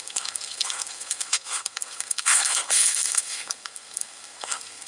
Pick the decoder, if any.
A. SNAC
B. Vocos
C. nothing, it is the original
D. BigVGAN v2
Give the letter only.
A